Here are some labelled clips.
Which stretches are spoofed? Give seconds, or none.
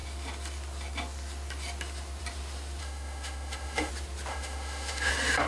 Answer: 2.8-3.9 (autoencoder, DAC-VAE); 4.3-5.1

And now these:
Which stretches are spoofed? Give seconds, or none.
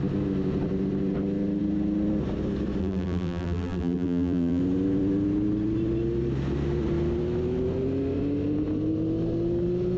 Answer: 2.8-4.6 (vocoder, BigVGAN v2)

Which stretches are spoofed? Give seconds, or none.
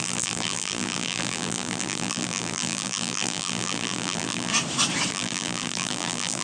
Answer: 0.0-4.5 (vocoder, BigVGAN v2); 5.1-6.4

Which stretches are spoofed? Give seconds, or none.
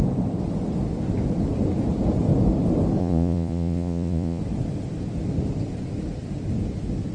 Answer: 3.0-4.4 (vocoder, Vocos)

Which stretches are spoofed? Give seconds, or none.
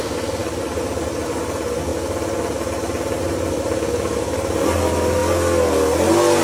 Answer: none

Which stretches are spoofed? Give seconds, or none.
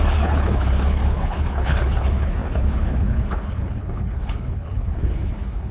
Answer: 0.0-5.7 (codec, HILCodec)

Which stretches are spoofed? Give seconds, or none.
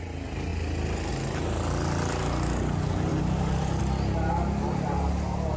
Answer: 3.1-3.8 (vocoder, BigVGAN v2)